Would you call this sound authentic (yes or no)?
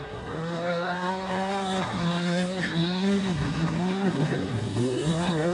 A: no